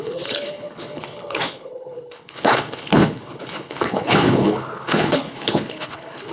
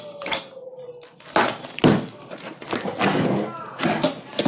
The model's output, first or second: first